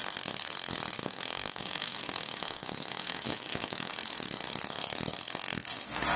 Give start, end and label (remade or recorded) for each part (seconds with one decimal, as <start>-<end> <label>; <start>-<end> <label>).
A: 0.0-1.0 recorded; 1.0-3.9 remade; 3.9-6.2 recorded

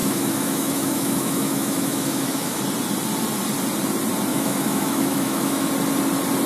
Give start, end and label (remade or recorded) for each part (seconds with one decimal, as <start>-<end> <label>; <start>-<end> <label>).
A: 0.0-2.6 remade; 2.6-4.3 recorded; 4.3-5.7 remade; 5.7-6.5 recorded

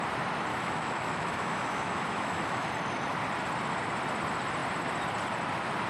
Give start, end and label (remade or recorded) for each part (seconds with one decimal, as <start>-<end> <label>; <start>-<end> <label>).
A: 0.0-0.5 recorded; 0.5-2.7 remade; 2.7-5.9 recorded

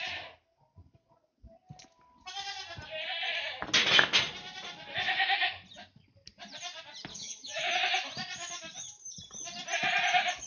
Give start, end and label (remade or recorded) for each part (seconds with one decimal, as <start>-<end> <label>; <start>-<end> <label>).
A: 0.0-7.1 recorded; 7.1-7.7 remade; 7.7-10.5 recorded

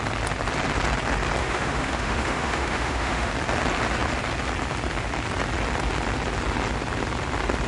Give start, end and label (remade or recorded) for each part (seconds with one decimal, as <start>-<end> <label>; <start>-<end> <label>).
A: 0.0-1.4 recorded; 1.4-3.3 remade; 3.3-7.7 recorded